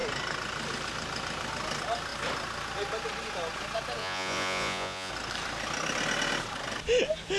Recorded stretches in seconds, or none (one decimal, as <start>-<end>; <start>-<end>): 0.0-4.0; 5.1-7.4